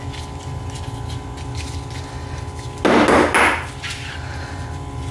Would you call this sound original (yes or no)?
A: yes